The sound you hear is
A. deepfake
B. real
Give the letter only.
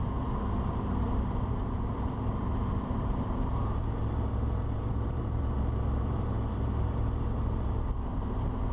A